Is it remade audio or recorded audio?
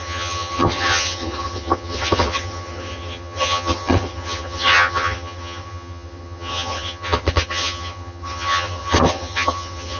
remade